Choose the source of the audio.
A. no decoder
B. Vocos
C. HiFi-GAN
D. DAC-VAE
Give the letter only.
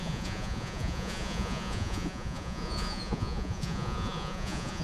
B